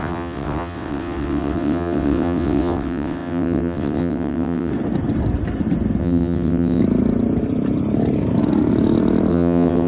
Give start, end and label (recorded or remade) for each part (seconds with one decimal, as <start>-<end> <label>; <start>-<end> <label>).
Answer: 0.0-4.7 remade; 4.7-6.0 recorded; 6.0-6.8 remade; 6.8-9.3 recorded; 9.3-9.9 remade